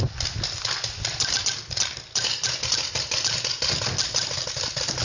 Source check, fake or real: real